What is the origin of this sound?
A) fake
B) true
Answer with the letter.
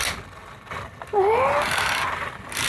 B